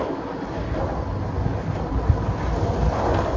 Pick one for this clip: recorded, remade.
recorded